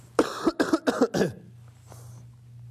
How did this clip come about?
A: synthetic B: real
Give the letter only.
B